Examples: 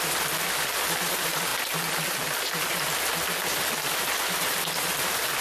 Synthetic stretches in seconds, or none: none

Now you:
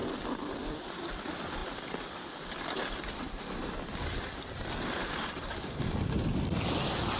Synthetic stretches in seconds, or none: none

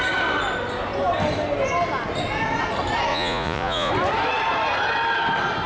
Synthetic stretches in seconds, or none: 3.1-3.9 (vocoder, Vocos)

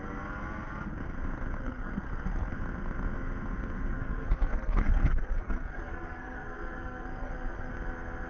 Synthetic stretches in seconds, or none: 1.6-2.5 (codec, SNAC); 3.9-7.7

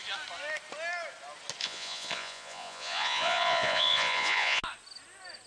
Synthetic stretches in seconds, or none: 1.6-4.6 (vocoder, Vocos)

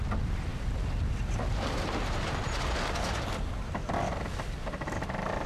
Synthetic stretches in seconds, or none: none

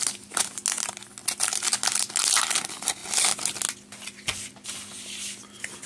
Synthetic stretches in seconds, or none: none

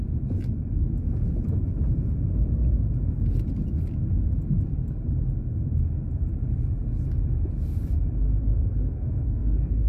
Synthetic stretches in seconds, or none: 8.5-9.9 (codec, SNAC)